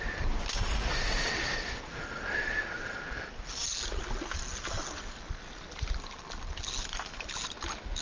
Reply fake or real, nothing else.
real